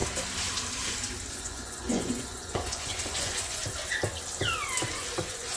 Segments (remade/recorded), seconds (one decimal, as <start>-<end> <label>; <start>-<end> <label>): 0.0-1.3 recorded; 1.3-3.6 remade; 3.6-4.9 recorded; 4.9-5.6 remade